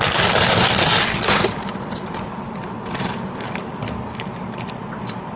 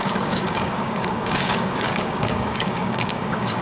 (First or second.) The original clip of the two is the first